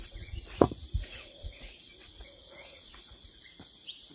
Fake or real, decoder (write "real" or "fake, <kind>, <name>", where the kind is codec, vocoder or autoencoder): fake, vocoder, Vocos